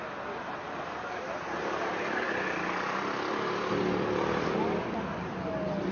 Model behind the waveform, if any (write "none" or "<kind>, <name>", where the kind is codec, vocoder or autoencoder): none